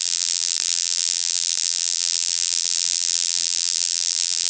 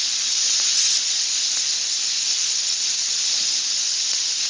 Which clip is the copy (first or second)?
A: first